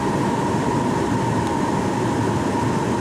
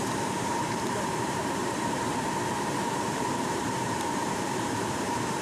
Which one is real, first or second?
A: first